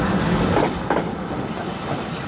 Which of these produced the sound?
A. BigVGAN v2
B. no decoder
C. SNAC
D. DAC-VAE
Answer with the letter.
B